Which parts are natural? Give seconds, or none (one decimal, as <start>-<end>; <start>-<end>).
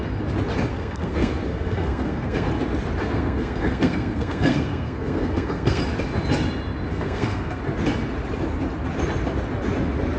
0.0-0.7; 2.5-3.0; 5.8-6.9; 7.6-10.2